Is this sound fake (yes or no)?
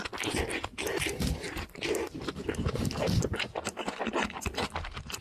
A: no